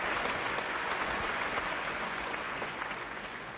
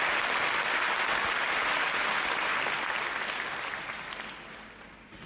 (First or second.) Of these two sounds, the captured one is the second